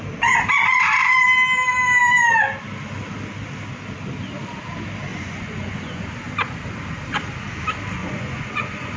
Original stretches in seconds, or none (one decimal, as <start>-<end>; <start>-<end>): 0.0-5.1; 6.0-8.0